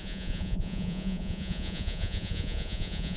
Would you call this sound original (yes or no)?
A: no